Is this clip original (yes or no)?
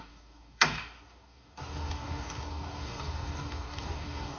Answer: no